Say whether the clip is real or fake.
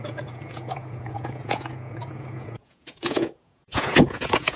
fake